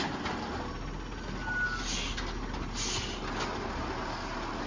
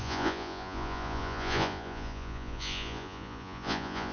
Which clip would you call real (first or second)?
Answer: first